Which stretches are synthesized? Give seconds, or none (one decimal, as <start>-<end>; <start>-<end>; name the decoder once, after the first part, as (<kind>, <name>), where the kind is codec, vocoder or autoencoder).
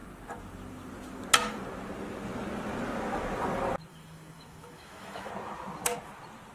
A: 3.9-5.3 (autoencoder, DAC-VAE)